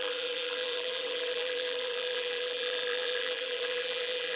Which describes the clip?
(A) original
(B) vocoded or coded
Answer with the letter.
B